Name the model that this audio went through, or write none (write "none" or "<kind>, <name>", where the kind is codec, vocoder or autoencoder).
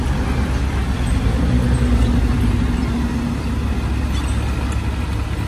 none